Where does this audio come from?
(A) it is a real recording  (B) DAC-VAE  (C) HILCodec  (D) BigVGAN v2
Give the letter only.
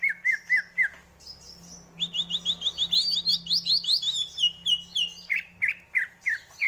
A